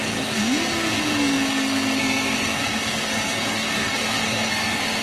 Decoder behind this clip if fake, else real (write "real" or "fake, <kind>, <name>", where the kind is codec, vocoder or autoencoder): fake, codec, SNAC